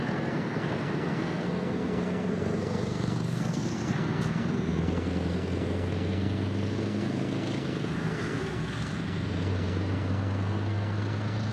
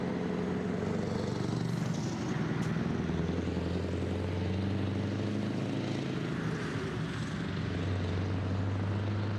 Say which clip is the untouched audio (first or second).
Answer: second